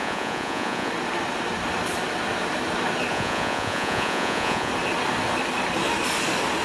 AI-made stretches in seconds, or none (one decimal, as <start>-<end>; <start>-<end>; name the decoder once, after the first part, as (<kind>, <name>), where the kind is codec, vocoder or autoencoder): 0.0-0.9 (vocoder, Vocos); 3.1-4.7